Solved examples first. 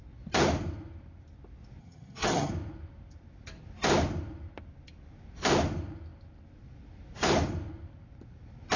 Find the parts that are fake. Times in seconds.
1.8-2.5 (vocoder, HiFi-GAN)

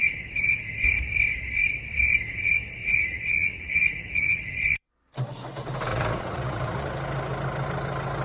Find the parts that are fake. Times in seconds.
2.8-4.9 (vocoder, Vocos); 5.9-6.9